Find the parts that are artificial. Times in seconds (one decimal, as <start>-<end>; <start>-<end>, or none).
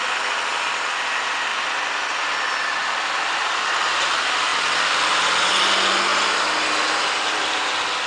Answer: none